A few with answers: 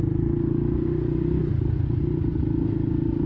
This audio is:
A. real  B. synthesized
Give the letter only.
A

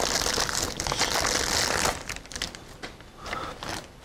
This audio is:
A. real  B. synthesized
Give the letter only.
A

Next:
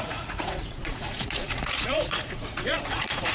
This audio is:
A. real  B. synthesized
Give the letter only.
B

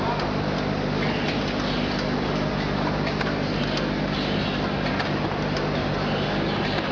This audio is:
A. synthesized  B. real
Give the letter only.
B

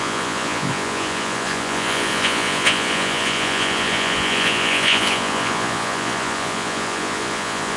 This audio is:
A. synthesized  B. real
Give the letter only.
A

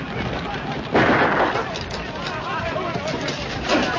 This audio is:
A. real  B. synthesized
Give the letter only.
A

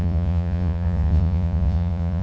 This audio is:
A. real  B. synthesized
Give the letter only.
B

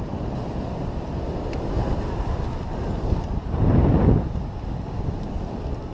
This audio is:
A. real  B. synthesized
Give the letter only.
A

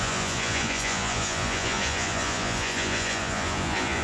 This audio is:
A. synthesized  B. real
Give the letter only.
A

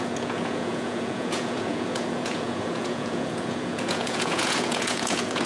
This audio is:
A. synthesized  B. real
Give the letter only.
A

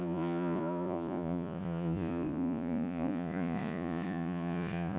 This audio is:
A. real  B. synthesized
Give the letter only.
B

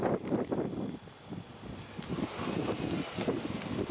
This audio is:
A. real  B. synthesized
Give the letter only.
A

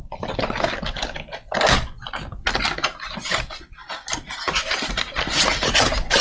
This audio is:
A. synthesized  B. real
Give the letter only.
B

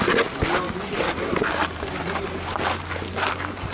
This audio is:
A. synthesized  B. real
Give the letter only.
B